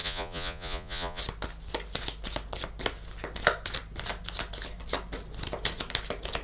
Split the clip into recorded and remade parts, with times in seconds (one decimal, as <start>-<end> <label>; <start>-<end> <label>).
0.0-1.2 remade; 1.2-6.4 recorded

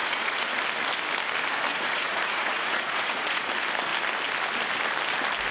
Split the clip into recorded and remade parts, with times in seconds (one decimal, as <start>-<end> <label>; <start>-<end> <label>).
0.0-0.6 remade; 0.6-1.7 recorded; 1.7-3.5 remade; 3.5-5.5 recorded

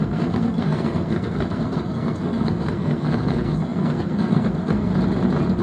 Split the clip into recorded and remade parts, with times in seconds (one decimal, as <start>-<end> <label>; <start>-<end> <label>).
0.0-4.9 remade; 4.9-5.6 recorded

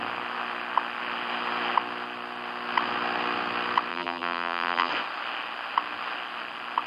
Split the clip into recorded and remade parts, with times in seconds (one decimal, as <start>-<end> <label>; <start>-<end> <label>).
0.0-3.9 recorded; 3.9-4.9 remade; 4.9-6.9 recorded

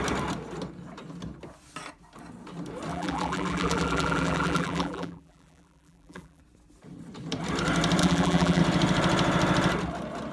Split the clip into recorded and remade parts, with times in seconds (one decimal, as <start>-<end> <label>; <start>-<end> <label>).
0.0-2.9 recorded; 2.9-6.4 remade; 6.4-8.0 recorded; 8.0-8.6 remade; 8.6-10.3 recorded

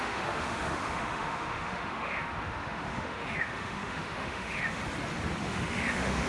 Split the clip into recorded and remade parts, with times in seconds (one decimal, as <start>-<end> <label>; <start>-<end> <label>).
0.0-4.8 remade; 4.8-5.4 recorded; 5.4-6.3 remade

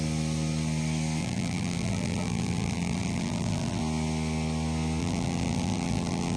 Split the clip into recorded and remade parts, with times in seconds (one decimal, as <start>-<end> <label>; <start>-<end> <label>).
0.0-1.2 recorded; 1.2-3.8 remade; 3.8-5.0 recorded; 5.0-6.4 remade

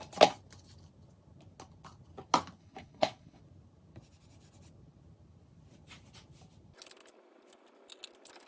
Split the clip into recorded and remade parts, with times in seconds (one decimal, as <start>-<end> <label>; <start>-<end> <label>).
0.0-2.6 recorded; 2.6-3.4 remade; 3.4-8.5 recorded